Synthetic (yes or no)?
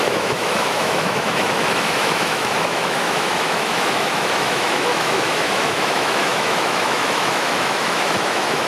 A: yes